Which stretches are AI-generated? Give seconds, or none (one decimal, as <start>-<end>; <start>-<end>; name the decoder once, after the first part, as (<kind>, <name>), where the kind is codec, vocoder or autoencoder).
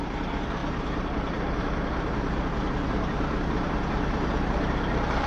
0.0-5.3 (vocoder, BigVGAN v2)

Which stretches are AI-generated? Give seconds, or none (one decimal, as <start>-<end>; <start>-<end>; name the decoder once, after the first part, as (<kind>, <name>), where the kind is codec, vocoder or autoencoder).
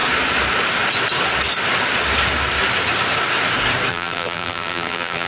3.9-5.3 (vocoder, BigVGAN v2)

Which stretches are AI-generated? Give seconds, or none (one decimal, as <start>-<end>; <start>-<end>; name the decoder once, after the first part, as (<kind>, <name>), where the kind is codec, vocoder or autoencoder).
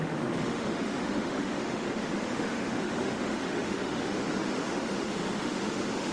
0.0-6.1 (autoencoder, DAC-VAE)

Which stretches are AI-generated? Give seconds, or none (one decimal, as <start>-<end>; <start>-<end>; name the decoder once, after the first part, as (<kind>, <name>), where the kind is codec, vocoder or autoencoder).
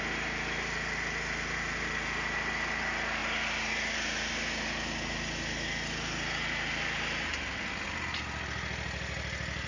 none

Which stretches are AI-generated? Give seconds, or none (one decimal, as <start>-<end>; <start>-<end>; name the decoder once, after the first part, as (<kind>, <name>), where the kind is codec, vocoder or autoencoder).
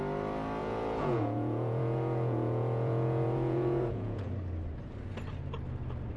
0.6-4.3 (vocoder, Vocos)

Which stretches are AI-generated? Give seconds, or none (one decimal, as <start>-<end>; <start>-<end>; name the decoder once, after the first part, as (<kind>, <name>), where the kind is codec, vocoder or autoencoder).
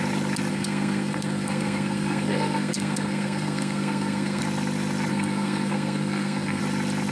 0.5-4.4 (codec, SNAC); 5.1-6.6